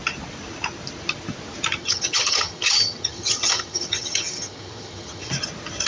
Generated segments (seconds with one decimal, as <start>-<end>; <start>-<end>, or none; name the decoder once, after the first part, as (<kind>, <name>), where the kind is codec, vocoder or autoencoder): 1.8-5.3 (vocoder, HiFi-GAN)